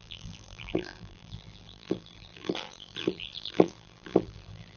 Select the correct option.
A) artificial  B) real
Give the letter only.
A